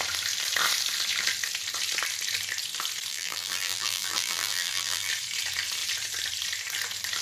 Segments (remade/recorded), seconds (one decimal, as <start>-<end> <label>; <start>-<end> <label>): 0.0-3.1 recorded; 3.1-5.1 remade; 5.1-7.2 recorded